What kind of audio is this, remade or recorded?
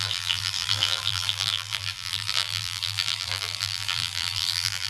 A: remade